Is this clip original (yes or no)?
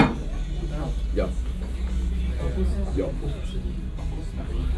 yes